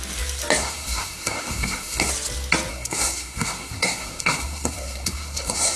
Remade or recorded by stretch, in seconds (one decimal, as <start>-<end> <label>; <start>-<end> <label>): 0.0-0.6 recorded; 0.6-2.1 remade; 2.1-2.7 recorded; 2.7-5.8 remade